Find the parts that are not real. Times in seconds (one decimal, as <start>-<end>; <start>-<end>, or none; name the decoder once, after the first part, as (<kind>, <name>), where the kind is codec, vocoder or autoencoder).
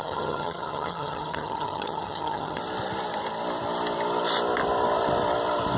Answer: 0.0-2.6 (vocoder, HiFi-GAN)